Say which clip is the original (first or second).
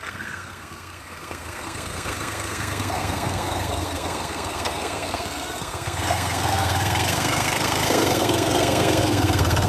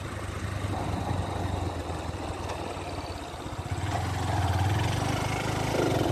second